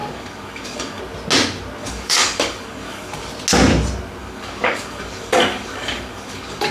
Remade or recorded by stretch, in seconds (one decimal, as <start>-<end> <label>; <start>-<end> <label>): 0.0-1.0 remade; 1.0-1.8 recorded; 1.8-3.3 remade; 3.3-4.2 recorded; 4.2-6.7 remade